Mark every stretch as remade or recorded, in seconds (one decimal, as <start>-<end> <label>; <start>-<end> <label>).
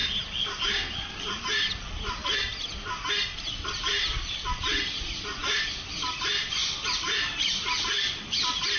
0.0-8.8 recorded